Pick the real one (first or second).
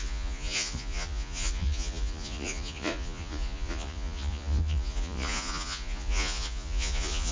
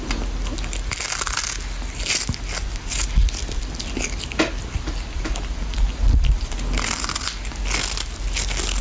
second